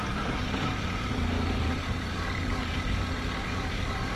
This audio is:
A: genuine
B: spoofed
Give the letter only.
B